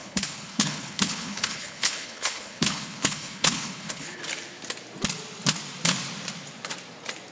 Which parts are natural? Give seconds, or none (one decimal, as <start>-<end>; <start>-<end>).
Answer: 4.2-7.3